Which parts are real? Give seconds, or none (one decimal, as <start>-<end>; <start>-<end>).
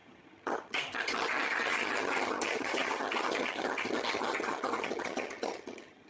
none